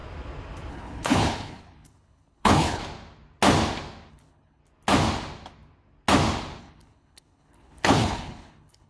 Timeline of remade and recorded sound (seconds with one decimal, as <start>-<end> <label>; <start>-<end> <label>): 0.0-0.7 recorded; 0.7-2.8 remade; 2.8-4.1 recorded; 4.1-4.6 remade; 4.6-6.6 recorded; 6.6-8.9 remade